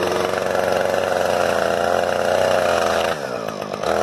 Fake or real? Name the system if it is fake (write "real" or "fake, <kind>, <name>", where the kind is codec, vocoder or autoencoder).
real